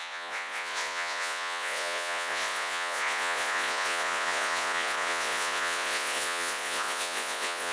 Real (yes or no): no